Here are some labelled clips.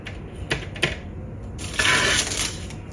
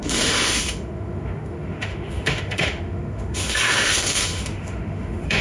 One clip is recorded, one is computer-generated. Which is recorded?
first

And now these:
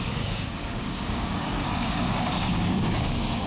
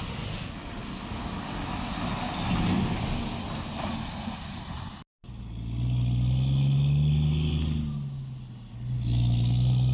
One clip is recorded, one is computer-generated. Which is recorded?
second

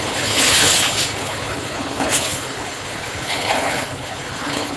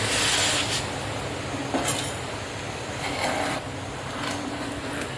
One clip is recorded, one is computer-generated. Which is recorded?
second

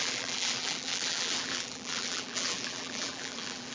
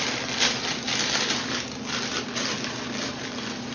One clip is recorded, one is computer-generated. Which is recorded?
second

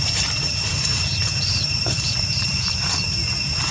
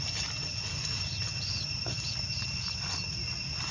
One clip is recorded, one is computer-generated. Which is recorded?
second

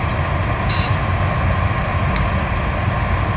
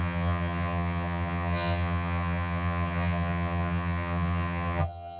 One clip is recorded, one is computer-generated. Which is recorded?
first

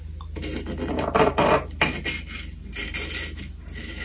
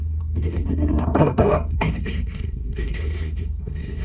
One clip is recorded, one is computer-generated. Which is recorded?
first